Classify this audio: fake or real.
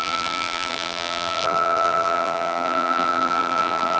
fake